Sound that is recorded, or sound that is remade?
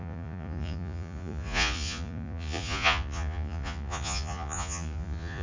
remade